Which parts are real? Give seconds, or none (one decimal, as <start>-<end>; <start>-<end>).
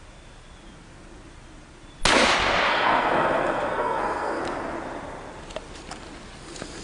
0.0-2.7; 4.4-6.8